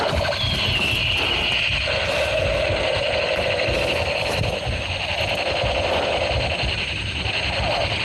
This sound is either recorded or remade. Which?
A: recorded